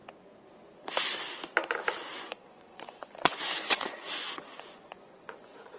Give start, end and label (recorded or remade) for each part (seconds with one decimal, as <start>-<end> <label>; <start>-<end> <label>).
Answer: 0.0-2.2 recorded; 2.2-5.8 remade